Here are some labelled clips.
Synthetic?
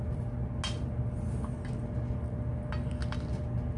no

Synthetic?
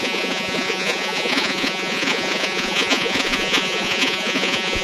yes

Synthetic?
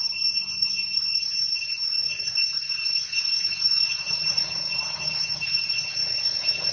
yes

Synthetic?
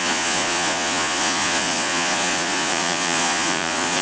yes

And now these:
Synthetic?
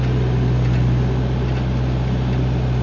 no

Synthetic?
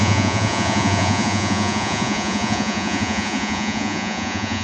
yes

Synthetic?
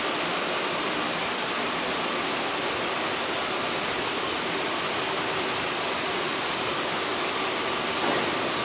no